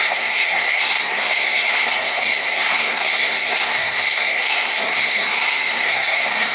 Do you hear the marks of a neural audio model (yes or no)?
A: yes